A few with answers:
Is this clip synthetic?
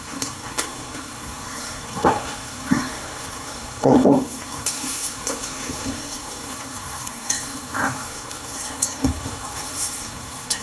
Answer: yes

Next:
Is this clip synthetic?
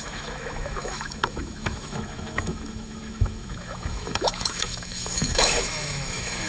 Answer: yes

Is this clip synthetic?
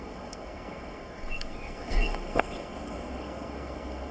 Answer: yes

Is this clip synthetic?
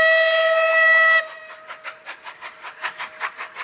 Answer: no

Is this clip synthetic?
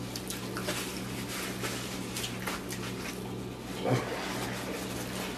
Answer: no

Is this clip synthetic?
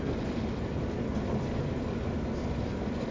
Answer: no